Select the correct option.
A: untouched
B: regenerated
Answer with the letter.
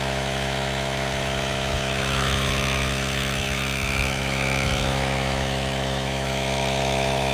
B